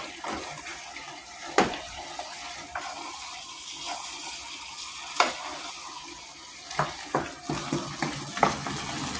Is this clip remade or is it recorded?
recorded